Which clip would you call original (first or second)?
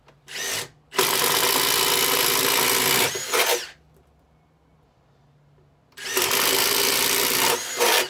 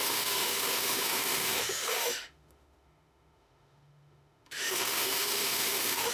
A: first